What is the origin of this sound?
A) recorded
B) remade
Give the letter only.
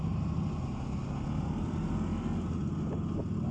A